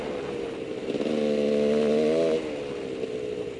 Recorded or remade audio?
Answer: recorded